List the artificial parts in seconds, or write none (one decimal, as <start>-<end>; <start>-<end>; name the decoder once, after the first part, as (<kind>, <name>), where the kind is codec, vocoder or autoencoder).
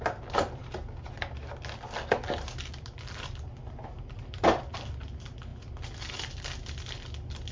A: none